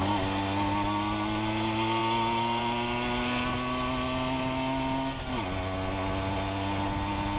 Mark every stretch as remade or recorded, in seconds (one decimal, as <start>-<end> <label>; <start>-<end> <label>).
0.0-7.4 recorded